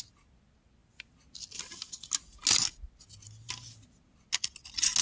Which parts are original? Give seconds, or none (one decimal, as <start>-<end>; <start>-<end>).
0.0-5.0